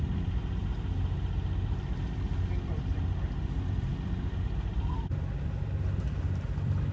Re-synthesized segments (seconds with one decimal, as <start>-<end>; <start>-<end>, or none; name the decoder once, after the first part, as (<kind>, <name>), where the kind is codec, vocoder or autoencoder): 0.0-0.4 (vocoder, BigVGAN v2); 2.4-6.9